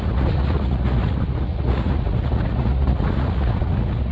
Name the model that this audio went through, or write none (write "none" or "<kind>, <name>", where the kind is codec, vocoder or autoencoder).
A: vocoder, Vocos